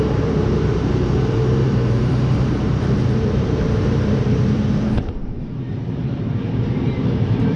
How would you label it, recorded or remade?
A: remade